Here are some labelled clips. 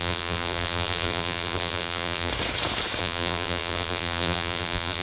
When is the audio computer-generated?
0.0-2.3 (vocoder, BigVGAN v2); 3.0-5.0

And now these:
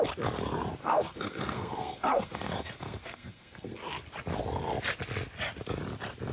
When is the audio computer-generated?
0.8-3.8 (codec, SNAC)

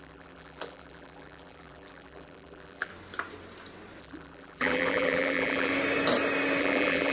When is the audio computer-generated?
0.0-2.9 (vocoder, BigVGAN v2); 4.0-5.7; 6.6-7.1

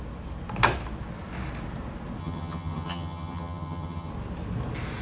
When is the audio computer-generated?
2.2-4.1 (vocoder, HiFi-GAN)

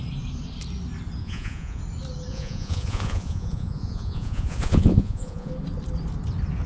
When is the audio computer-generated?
1.2-1.8 (vocoder, Vocos); 2.3-5.5